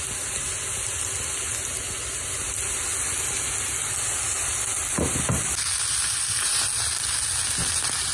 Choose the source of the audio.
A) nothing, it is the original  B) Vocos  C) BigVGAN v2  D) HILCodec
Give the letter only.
A